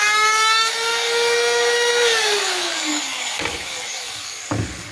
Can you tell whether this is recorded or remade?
remade